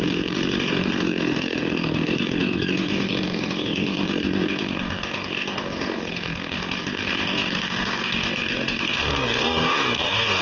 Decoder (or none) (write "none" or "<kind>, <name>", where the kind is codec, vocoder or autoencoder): codec, DAC